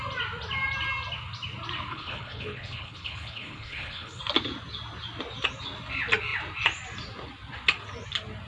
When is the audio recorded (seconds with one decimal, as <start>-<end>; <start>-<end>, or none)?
0.0-1.9; 4.2-8.5